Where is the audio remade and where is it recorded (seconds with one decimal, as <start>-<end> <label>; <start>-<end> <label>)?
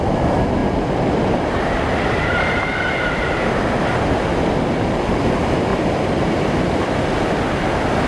0.0-5.7 recorded; 5.7-7.0 remade; 7.0-8.1 recorded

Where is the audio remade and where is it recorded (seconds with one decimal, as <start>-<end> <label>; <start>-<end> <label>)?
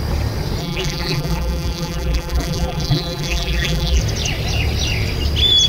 0.0-0.6 recorded; 0.6-4.0 remade; 4.0-5.7 recorded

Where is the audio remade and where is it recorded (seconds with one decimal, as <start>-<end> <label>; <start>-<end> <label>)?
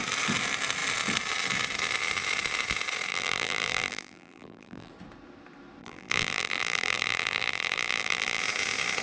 0.0-3.1 recorded; 3.1-4.9 remade; 4.9-5.8 recorded; 5.8-8.4 remade; 8.4-9.0 recorded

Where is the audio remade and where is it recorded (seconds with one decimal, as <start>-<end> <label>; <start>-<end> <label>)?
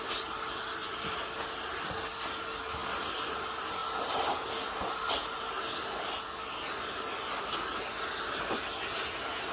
0.0-0.8 recorded; 0.8-2.2 remade; 2.2-2.8 recorded; 2.8-3.4 remade; 3.4-9.5 recorded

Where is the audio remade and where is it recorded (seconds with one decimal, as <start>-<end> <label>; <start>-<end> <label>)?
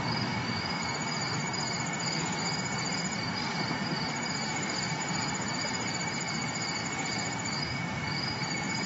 0.0-1.5 remade; 1.5-2.6 recorded; 2.6-8.9 remade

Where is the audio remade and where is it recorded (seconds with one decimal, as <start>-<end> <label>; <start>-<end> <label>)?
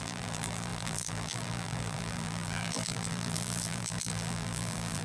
0.0-5.0 remade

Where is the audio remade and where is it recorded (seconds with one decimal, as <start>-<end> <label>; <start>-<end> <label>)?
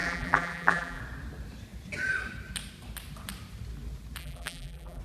0.0-1.0 remade; 1.0-4.2 recorded; 4.2-5.0 remade